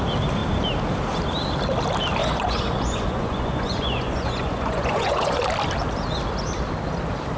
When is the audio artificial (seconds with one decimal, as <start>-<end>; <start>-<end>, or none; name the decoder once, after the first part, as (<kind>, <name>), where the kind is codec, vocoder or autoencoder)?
2.2-5.4 (vocoder, Vocos)